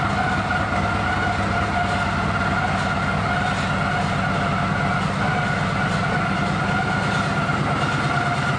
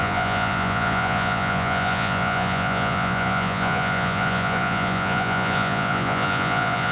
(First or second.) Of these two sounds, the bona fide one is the first